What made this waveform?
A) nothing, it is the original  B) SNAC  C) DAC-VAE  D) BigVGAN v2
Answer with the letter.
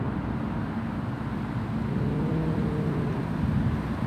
A